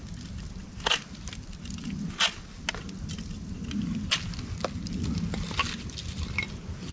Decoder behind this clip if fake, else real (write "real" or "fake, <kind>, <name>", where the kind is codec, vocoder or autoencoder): real